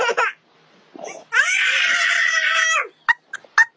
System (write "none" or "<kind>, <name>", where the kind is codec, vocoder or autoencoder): none